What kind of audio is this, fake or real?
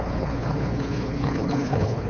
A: fake